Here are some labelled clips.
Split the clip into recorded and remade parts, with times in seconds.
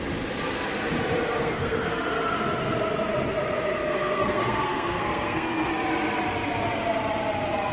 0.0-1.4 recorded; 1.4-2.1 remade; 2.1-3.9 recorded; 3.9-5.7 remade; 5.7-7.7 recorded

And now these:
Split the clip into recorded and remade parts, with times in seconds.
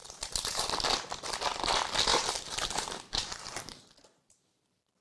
0.0-0.7 remade; 0.7-2.1 recorded; 2.1-3.8 remade; 3.8-5.0 recorded